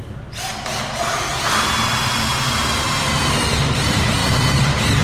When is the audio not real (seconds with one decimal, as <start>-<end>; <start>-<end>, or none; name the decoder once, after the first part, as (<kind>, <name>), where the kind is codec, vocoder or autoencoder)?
4.2-5.0 (vocoder, BigVGAN v2)

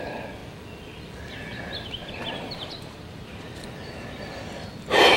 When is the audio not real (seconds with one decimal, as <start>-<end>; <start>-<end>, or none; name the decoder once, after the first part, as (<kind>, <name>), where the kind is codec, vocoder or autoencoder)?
2.0-3.6 (vocoder, BigVGAN v2)

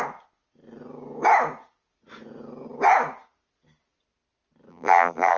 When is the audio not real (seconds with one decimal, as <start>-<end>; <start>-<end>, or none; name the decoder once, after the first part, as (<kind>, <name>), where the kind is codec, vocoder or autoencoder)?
4.7-5.4 (vocoder, BigVGAN v2)

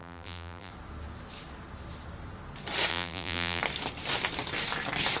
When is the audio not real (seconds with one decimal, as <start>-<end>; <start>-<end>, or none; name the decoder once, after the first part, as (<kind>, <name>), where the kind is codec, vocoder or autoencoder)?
0.0-0.7 (vocoder, BigVGAN v2); 2.9-3.6

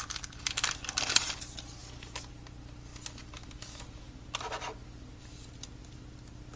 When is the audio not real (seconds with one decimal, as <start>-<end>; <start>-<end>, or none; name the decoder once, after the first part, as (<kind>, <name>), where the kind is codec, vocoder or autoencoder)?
0.0-1.8 (vocoder, BigVGAN v2); 2.3-2.9; 5.2-6.6

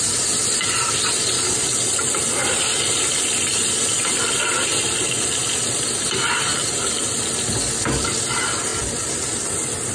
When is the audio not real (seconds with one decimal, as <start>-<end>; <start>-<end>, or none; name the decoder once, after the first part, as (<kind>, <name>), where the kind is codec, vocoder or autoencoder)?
6.5-7.0 (vocoder, BigVGAN v2); 8.7-9.5